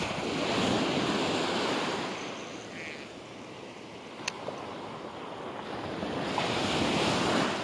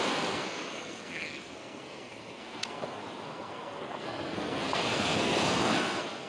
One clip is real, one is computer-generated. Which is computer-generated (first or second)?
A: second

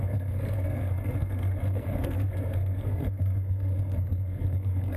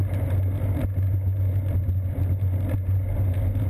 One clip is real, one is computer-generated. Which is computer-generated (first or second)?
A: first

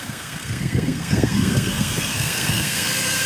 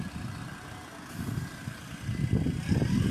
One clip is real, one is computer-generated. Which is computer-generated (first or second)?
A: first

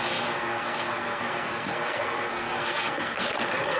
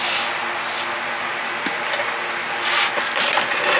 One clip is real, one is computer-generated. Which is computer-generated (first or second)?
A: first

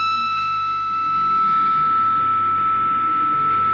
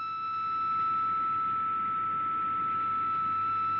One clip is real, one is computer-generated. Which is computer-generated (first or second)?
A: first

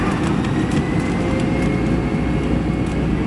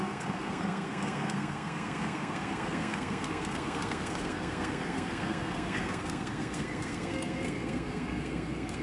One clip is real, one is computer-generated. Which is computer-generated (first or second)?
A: second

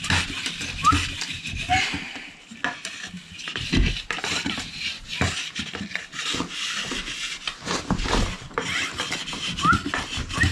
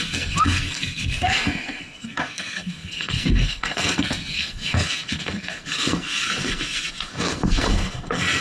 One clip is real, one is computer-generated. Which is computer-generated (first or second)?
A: second